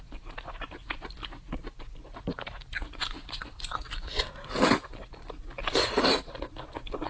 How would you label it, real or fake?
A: real